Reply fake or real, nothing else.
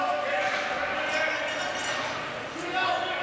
real